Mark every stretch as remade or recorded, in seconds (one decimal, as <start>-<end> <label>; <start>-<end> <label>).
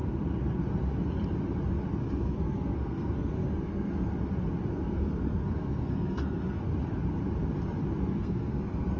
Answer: 0.0-1.9 recorded; 1.9-4.1 remade; 4.1-4.7 recorded; 4.7-6.7 remade; 6.7-8.0 recorded; 8.0-9.0 remade